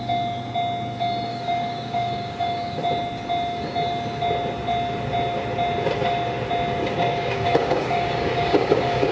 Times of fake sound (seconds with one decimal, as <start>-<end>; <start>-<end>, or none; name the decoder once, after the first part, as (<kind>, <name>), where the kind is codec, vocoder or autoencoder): 1.3-2.8 (codec, DAC); 6.8-9.1